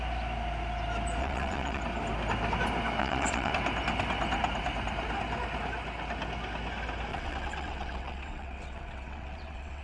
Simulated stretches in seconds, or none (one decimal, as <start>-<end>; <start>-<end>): 1.2-1.8; 3.0-3.5; 7.1-9.8